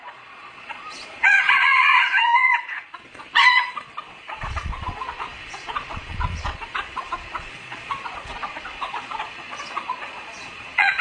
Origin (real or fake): fake